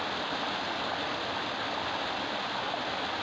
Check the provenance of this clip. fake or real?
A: real